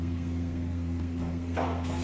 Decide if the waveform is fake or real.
fake